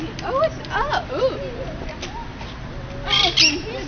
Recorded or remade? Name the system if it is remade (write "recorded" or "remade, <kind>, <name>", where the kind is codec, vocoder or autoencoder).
recorded